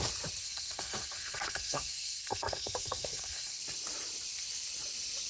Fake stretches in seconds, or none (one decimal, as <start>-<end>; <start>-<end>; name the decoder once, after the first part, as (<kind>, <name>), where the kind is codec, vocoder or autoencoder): 0.4-3.6 (codec, SNAC)